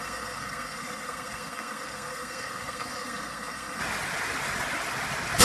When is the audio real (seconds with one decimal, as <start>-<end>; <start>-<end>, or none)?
3.8-5.4